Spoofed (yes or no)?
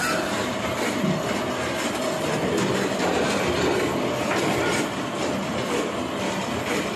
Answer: no